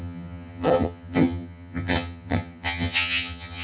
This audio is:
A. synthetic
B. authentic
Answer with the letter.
A